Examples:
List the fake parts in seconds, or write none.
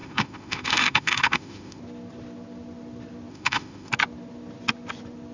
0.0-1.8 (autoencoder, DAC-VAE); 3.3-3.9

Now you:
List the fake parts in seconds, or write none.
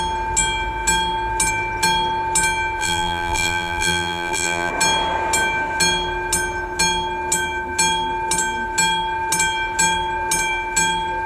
2.8-4.7 (vocoder, BigVGAN v2)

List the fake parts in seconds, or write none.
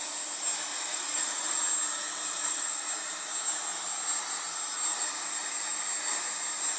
0.7-1.6 (vocoder, Vocos); 2.3-2.8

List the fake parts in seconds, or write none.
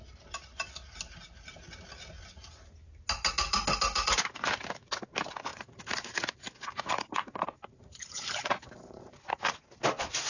5.5-9.2 (vocoder, BigVGAN v2)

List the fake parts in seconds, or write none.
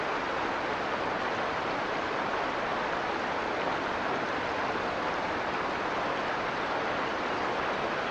none